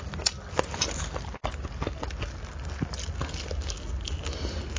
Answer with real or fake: real